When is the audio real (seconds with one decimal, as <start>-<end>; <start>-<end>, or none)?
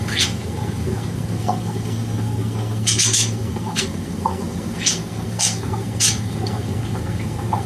none